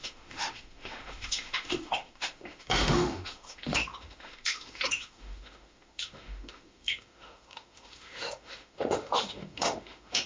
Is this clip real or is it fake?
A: fake